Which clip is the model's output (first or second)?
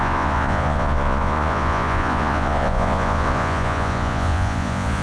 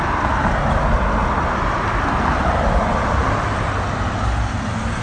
first